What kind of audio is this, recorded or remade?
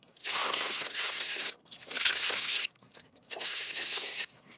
remade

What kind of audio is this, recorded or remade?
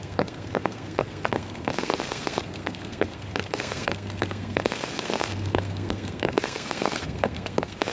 remade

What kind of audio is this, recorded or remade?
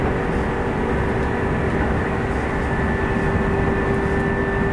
recorded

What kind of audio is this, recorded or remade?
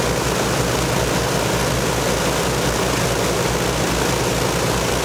recorded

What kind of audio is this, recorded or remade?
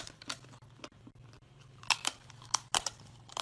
recorded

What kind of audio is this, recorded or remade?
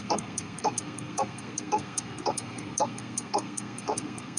remade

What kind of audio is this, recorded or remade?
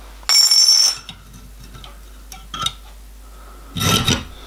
recorded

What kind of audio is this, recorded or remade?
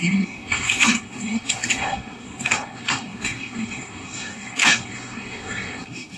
remade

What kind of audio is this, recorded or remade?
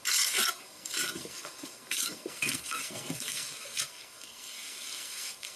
remade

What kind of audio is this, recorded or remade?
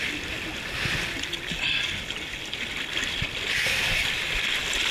recorded